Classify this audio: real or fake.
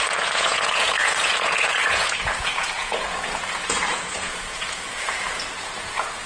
fake